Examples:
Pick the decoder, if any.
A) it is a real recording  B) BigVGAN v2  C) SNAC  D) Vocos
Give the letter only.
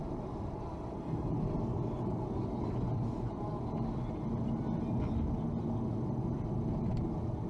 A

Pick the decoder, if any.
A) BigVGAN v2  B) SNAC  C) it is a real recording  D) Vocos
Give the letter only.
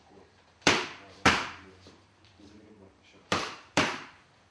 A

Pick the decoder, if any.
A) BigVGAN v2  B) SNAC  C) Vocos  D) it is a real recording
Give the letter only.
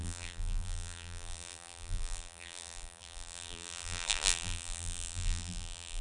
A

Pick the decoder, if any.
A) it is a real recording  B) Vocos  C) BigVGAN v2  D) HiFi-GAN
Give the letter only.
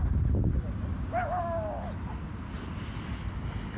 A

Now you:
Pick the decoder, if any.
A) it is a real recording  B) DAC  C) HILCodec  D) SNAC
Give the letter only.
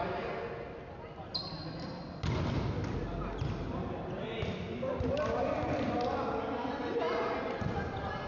A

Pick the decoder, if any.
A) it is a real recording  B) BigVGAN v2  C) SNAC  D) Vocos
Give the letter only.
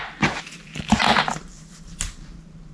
B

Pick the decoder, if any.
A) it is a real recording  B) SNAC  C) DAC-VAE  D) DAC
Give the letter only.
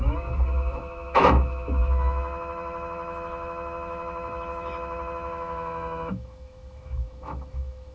C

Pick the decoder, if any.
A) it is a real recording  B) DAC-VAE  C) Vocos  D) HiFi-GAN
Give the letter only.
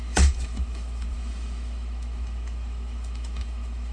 B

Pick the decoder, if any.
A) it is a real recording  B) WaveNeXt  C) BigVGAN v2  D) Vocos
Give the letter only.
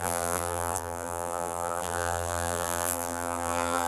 C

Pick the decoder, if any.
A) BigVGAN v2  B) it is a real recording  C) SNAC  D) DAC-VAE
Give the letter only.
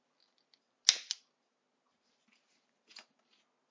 B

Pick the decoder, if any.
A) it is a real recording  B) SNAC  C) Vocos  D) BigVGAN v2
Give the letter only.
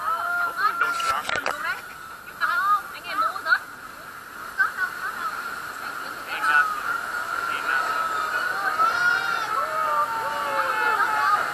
A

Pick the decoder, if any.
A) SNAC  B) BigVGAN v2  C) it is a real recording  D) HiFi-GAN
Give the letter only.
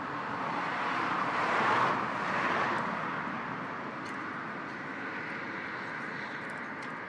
C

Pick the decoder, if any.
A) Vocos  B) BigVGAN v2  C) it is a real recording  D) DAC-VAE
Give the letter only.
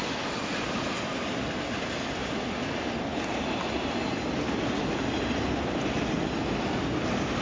C